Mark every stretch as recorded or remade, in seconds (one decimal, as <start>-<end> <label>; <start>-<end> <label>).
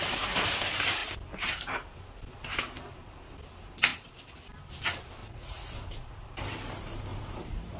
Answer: 0.0-5.2 recorded; 5.2-5.7 remade; 5.7-7.1 recorded; 7.1-7.8 remade